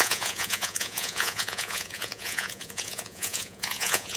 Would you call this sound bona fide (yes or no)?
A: no